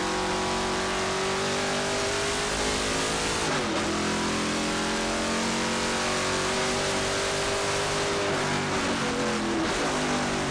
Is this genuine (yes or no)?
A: yes